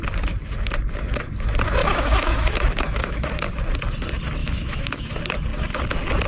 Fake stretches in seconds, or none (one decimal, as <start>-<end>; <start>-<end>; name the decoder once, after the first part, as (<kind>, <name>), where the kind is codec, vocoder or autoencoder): 1.8-3.5 (autoencoder, DAC-VAE); 4.4-5.1